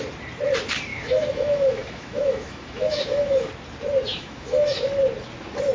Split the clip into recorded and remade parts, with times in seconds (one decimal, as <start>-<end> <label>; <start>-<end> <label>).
0.0-0.9 recorded; 0.9-3.5 remade; 3.5-4.1 recorded; 4.1-4.9 remade; 4.9-5.7 recorded